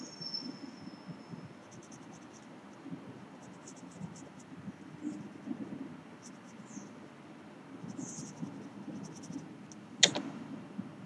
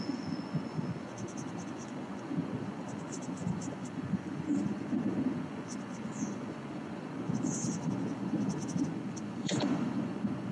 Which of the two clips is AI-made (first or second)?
second